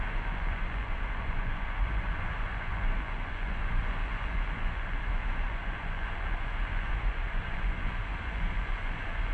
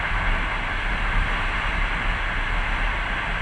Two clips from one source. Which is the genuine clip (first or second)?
second